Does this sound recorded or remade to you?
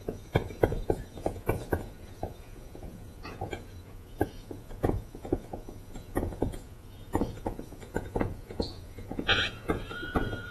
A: remade